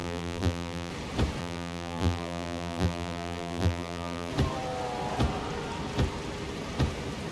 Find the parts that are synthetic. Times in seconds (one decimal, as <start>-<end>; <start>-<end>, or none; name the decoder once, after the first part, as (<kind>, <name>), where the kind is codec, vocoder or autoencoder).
0.0-0.9 (vocoder, BigVGAN v2); 1.4-4.3